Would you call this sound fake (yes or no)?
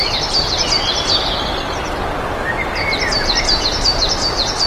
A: no